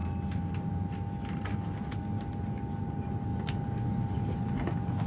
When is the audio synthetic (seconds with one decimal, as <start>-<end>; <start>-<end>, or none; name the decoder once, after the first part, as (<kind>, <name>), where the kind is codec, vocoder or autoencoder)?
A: none